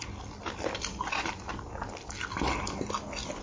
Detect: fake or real real